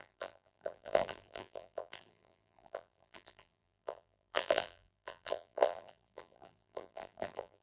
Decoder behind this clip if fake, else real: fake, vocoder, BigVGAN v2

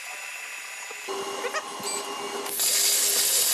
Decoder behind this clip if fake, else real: real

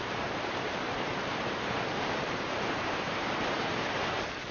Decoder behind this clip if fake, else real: fake, vocoder, BigVGAN v2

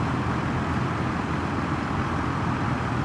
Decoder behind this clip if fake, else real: fake, vocoder, BigVGAN v2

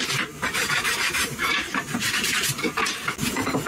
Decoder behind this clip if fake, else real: fake, vocoder, BigVGAN v2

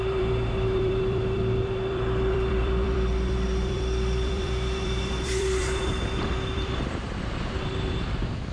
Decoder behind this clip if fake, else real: fake, vocoder, BigVGAN v2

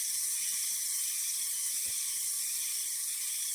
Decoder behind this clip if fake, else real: fake, vocoder, BigVGAN v2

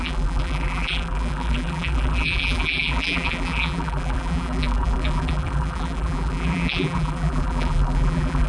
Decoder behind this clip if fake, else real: fake, vocoder, BigVGAN v2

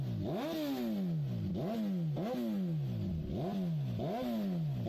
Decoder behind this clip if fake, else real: real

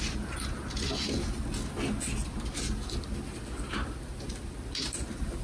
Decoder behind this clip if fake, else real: real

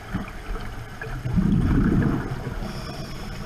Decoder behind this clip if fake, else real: real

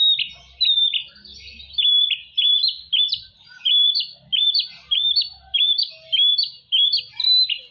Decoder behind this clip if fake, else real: real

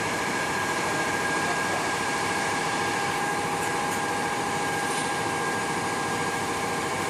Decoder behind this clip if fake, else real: fake, vocoder, BigVGAN v2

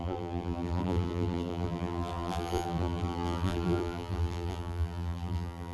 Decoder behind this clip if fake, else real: fake, vocoder, BigVGAN v2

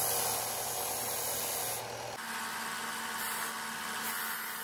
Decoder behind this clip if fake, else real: real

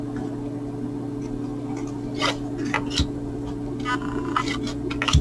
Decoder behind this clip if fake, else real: real